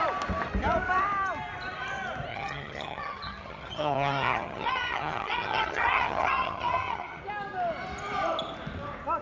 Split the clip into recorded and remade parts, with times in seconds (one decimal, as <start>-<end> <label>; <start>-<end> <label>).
0.0-2.3 recorded; 2.3-7.2 remade; 7.2-9.2 recorded